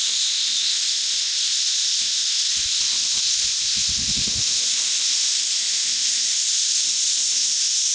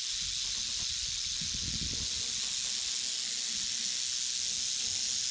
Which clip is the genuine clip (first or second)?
second